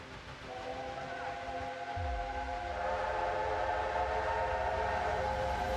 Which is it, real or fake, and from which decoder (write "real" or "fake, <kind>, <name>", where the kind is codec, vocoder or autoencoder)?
real